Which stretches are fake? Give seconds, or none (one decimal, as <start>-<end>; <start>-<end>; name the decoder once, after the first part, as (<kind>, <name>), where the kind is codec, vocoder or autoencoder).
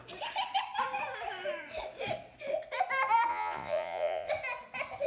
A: 3.3-4.3 (vocoder, Vocos)